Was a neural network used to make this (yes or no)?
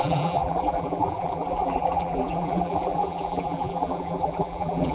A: yes